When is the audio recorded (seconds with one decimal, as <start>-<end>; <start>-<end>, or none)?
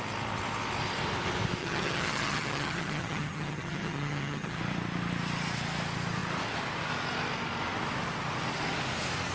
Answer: 0.0-1.6; 4.6-9.3